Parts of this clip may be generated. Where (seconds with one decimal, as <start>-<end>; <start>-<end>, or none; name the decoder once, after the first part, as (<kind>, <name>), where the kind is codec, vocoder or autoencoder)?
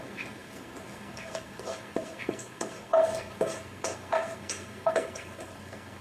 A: 0.0-6.0 (codec, SNAC)